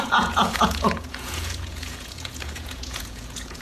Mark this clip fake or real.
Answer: fake